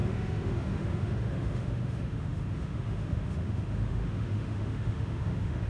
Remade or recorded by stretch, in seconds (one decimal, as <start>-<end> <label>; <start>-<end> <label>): 0.0-5.7 remade